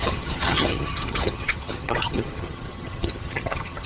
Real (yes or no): no